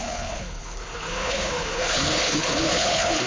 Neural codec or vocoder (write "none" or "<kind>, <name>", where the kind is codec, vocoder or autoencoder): codec, HILCodec